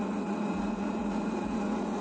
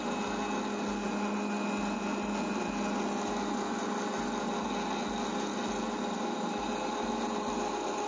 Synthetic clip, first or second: first